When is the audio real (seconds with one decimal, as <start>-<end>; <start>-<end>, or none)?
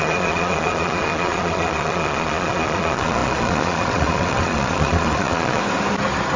5.6-6.4